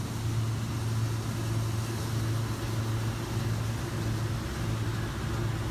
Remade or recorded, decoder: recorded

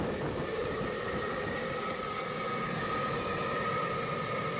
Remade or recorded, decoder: recorded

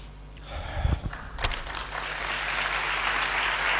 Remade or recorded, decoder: recorded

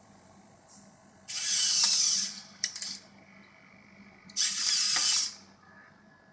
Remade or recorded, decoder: remade, vocoder, BigVGAN v2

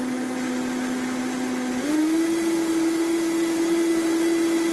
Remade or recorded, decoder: recorded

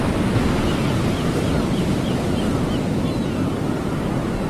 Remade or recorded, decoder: recorded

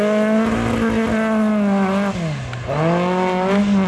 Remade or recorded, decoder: recorded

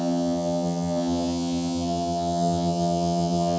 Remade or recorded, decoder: remade, vocoder, HiFi-GAN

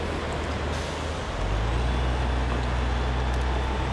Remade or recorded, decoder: recorded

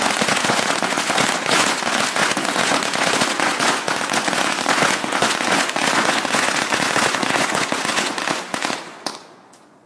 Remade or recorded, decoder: remade, vocoder, Vocos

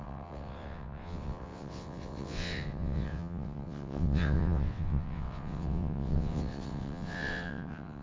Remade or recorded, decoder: remade, vocoder, WaveNeXt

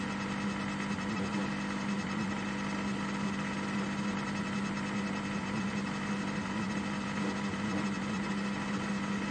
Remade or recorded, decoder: recorded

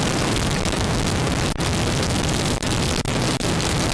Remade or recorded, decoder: remade, vocoder, BigVGAN v2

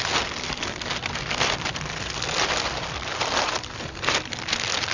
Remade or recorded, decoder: recorded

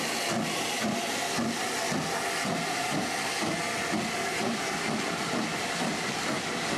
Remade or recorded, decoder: recorded